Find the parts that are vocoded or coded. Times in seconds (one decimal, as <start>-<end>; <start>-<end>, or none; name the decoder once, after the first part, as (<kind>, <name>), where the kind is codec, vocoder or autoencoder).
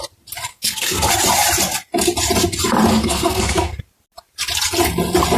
0.5-1.1 (codec, SNAC); 2.9-3.8